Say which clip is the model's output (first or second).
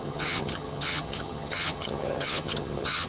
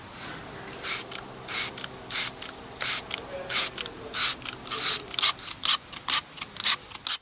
first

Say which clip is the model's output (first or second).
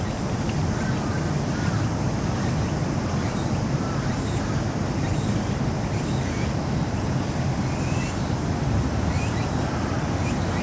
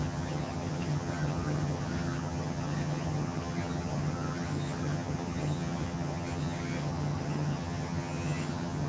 second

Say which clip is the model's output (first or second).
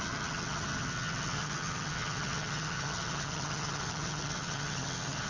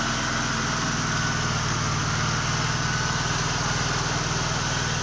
first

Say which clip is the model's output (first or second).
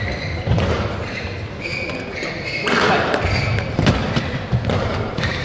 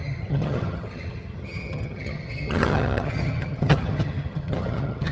second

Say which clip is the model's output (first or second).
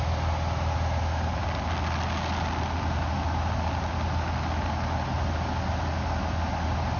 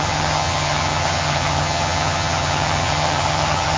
second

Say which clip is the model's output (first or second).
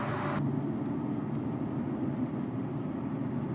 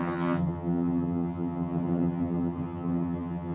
second